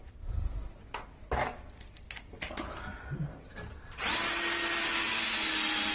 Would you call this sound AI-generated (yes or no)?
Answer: no